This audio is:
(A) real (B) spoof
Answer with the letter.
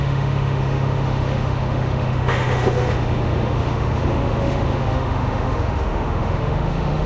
B